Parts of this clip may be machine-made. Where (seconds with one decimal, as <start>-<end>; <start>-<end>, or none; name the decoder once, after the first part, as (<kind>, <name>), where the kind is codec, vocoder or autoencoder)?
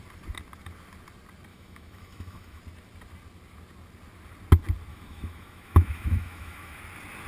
1.5-2.6 (autoencoder, DAC-VAE); 4.9-6.8